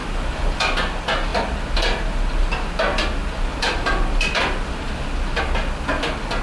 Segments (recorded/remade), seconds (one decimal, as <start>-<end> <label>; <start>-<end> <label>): 0.0-0.6 remade; 0.6-3.5 recorded; 3.5-5.4 remade; 5.4-6.4 recorded